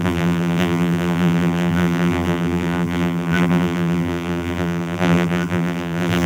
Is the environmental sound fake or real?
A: fake